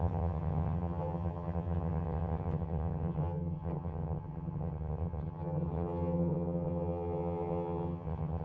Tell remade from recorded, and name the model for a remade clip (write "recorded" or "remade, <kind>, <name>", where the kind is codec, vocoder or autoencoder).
remade, vocoder, HiFi-GAN